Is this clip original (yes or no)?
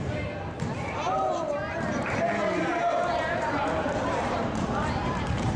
no